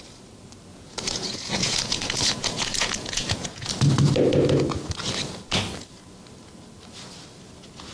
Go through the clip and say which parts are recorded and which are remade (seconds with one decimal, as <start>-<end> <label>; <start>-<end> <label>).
0.0-0.7 recorded; 0.7-3.7 remade; 3.7-7.9 recorded